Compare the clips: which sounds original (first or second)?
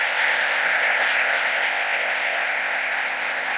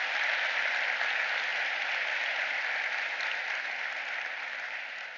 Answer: second